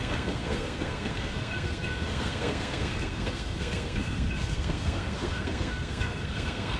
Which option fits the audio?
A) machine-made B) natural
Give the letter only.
A